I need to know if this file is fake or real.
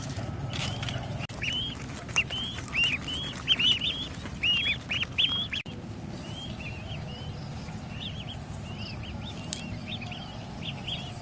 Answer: real